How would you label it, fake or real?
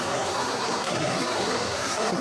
fake